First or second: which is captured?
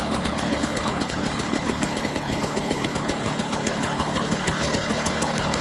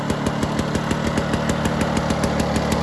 second